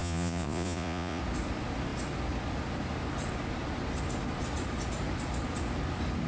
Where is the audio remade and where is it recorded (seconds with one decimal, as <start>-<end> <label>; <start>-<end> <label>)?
0.0-1.2 remade; 1.2-6.3 recorded